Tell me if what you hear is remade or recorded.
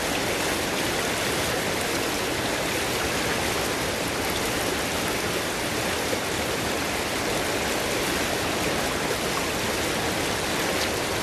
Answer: recorded